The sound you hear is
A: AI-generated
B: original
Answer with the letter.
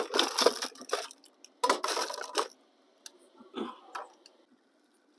B